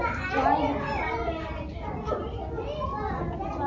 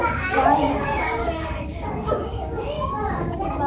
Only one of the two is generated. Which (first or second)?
second